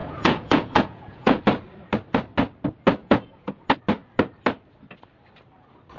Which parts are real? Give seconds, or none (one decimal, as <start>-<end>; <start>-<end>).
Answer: 1.4-3.0; 3.6-6.0